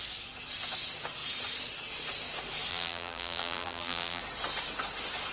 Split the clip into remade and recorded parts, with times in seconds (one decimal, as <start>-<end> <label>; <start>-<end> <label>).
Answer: 0.0-2.7 recorded; 2.7-4.2 remade; 4.2-5.3 recorded